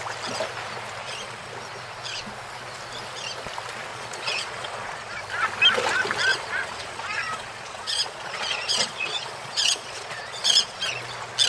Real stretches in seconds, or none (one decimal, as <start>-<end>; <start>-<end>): 0.0-1.0; 1.5-3.9; 5.2-6.3; 10.9-11.5